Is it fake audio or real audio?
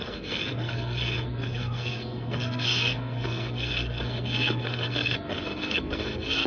fake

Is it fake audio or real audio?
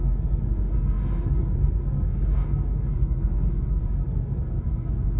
fake